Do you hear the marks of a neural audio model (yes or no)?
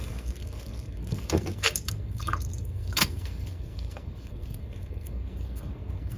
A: yes